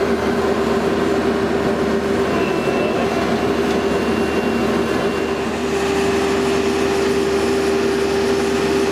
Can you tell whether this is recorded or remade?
recorded